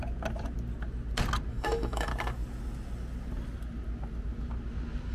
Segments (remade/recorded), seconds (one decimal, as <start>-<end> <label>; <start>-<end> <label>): 0.0-1.5 recorded; 1.5-2.1 remade; 2.1-5.1 recorded